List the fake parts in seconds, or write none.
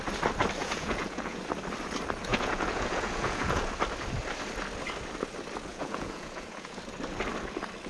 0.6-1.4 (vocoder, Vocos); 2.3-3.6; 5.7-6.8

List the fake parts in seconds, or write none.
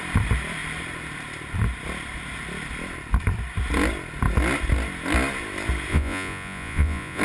5.9-7.2 (vocoder, Vocos)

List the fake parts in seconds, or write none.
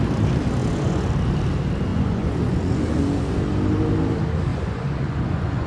0.6-1.1 (vocoder, Vocos); 1.9-3.0; 4.5-5.7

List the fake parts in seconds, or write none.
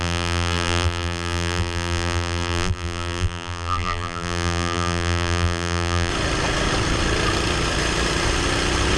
0.0-6.1 (vocoder, BigVGAN v2)